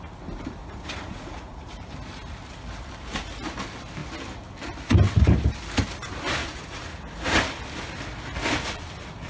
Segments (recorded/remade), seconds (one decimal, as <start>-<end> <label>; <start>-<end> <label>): 0.0-0.6 recorded; 0.6-1.8 remade; 1.8-6.4 recorded; 6.4-7.0 remade; 7.0-9.3 recorded

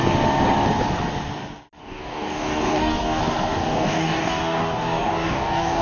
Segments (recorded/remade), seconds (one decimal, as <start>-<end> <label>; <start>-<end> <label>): 0.0-1.8 recorded; 1.8-3.2 remade; 3.2-3.6 recorded; 3.6-5.8 remade

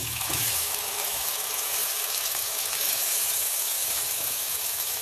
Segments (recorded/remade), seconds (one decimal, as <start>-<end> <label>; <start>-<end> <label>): 0.0-5.0 remade